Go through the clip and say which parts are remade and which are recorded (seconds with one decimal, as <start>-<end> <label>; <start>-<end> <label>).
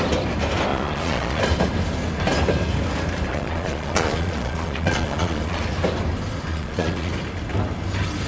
0.0-0.7 recorded; 0.7-1.4 remade; 1.4-3.3 recorded; 3.3-5.6 remade; 5.6-6.5 recorded; 6.5-7.1 remade; 7.1-8.3 recorded